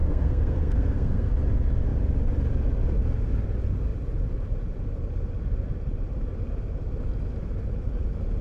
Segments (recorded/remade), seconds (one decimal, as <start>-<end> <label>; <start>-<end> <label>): 0.0-1.3 remade; 1.3-8.4 recorded